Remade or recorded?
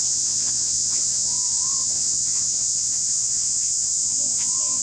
remade